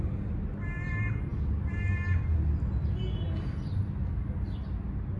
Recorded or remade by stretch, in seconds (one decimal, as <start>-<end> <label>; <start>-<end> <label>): 0.0-5.2 recorded